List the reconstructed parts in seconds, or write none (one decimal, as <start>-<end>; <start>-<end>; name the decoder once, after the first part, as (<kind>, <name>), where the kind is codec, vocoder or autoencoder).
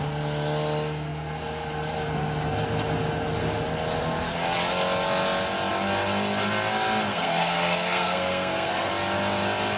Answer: 7.1-8.9 (codec, SNAC)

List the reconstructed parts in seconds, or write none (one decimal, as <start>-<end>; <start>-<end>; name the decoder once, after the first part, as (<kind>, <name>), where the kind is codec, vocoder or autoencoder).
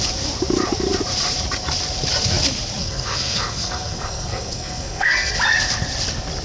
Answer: 2.8-5.3 (codec, SNAC)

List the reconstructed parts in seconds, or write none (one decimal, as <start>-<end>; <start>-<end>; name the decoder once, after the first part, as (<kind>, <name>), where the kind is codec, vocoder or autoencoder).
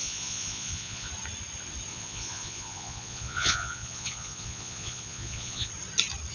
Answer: 0.0-1.1 (vocoder, Vocos); 1.9-5.7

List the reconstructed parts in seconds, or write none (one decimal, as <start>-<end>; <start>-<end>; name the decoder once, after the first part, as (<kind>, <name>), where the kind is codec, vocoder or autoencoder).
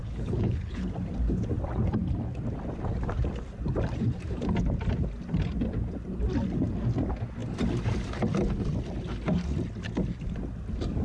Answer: 0.0-0.8 (codec, HILCodec)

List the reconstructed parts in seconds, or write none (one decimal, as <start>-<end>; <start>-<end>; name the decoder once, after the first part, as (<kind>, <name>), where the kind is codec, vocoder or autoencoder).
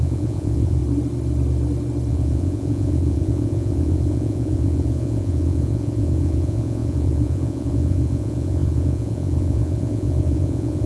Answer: 0.0-0.8 (vocoder, Vocos); 2.1-10.9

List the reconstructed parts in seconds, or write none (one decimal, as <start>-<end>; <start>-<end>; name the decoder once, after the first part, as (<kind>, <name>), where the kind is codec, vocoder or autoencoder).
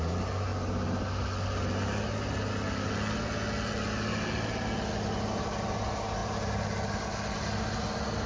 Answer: none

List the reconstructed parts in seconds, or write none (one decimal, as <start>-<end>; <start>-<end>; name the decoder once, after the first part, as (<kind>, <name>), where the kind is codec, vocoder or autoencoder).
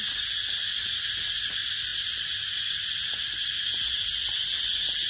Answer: none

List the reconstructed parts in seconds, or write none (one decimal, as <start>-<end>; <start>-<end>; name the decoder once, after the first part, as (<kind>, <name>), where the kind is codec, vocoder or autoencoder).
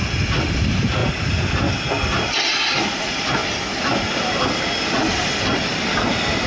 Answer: none